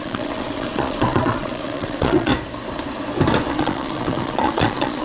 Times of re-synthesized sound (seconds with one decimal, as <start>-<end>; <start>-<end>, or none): 0.0-2.3; 3.5-5.0